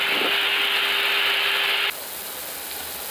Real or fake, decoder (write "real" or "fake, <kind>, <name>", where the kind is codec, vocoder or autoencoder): real